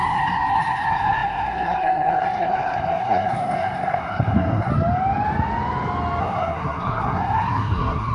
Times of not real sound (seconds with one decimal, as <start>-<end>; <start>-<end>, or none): 0.0-4.7; 6.2-8.1

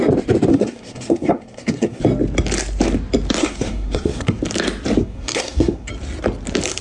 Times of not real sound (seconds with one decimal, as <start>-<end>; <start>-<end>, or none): 0.5-2.0; 3.4-4.4; 5.0-5.9

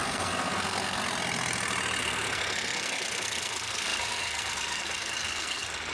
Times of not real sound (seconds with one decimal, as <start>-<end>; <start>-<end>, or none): 0.0-1.0; 2.0-5.9

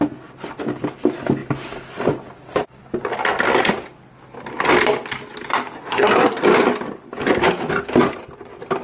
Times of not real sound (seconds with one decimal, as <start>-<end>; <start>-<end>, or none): 5.9-6.4

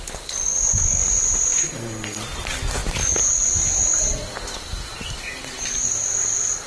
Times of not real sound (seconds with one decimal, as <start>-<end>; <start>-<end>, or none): 1.6-2.2